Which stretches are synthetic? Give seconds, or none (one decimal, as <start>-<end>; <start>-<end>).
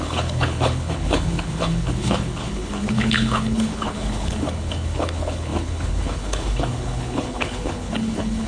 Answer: 0.0-8.5